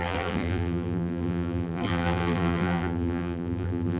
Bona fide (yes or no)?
no